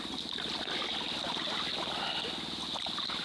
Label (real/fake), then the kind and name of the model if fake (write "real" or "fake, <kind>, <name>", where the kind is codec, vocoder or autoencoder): real